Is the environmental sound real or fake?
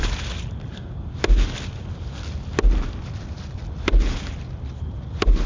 real